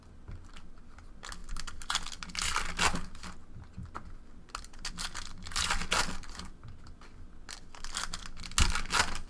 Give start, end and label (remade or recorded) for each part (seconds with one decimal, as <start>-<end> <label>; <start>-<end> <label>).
0.0-9.3 recorded